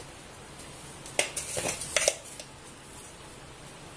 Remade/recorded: recorded